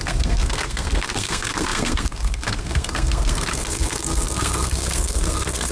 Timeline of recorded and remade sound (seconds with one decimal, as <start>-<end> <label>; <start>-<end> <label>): 0.0-5.7 remade